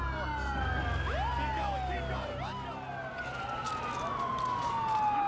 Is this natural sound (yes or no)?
yes